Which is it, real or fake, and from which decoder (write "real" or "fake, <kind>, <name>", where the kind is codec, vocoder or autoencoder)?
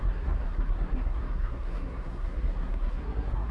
fake, codec, SNAC